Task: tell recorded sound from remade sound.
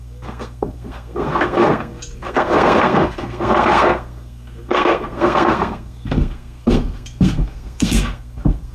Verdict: remade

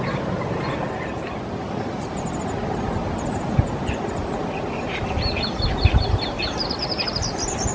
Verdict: recorded